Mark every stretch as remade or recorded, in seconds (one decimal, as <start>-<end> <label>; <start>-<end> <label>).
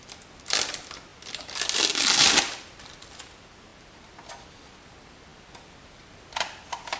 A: 0.0-7.0 recorded